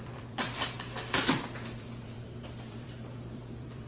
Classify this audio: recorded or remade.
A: remade